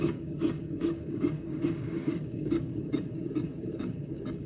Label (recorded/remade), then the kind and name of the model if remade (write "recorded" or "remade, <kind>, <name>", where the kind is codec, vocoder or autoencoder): remade, codec, DAC